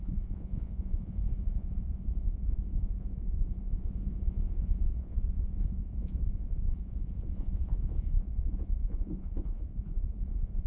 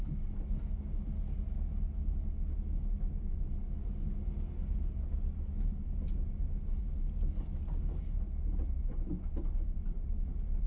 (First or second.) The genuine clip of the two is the second